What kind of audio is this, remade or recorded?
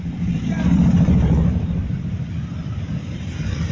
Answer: remade